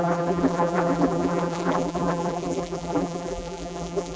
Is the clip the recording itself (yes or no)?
no